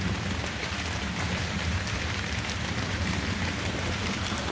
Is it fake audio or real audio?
fake